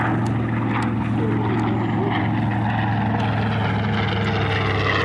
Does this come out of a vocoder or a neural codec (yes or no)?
no